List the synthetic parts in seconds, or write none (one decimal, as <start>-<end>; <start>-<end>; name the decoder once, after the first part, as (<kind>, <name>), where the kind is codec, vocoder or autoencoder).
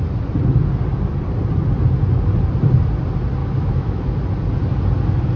3.4-4.1 (autoencoder, DAC-VAE)